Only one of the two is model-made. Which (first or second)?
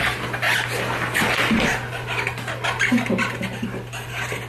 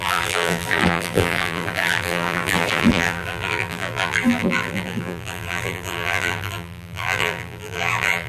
second